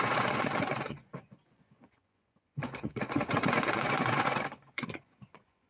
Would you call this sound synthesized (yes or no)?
yes